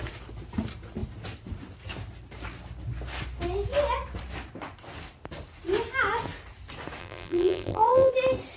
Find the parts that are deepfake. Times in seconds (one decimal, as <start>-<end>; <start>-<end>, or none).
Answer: 7.0-8.1